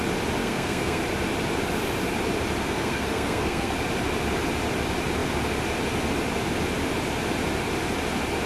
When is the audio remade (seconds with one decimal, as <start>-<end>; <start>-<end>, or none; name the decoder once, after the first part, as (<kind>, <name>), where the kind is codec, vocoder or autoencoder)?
0.4-1.0 (codec, SNAC); 2.6-3.7